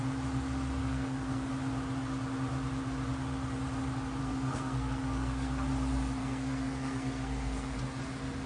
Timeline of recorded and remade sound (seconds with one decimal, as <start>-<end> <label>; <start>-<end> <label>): 0.0-0.8 recorded; 0.8-1.5 remade; 1.5-4.2 recorded; 4.2-5.5 remade; 5.5-6.2 recorded; 6.2-7.8 remade; 7.8-8.5 recorded